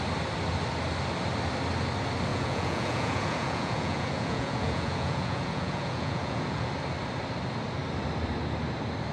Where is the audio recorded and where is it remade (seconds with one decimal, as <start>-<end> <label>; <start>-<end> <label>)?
0.0-2.3 recorded; 2.3-6.7 remade; 6.7-9.1 recorded